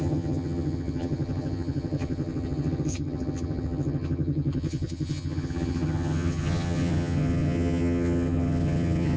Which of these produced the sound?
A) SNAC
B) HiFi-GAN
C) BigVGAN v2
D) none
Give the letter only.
B